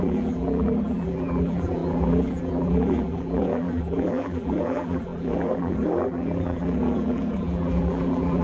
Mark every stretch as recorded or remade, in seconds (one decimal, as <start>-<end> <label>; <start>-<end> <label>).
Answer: 0.0-8.4 remade